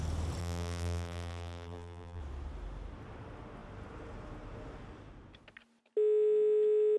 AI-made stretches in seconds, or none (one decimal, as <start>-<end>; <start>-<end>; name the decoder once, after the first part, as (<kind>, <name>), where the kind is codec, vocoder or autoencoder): 0.4-2.2 (vocoder, BigVGAN v2)